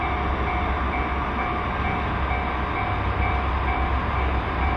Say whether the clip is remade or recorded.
recorded